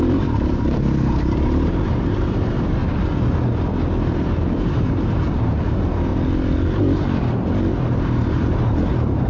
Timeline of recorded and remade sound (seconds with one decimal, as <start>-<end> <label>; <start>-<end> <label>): 0.0-2.8 remade; 2.8-4.1 recorded; 4.1-6.1 remade; 6.1-7.9 recorded; 7.9-9.3 remade